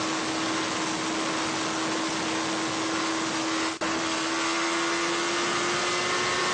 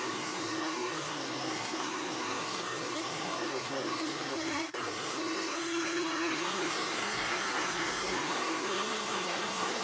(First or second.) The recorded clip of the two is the first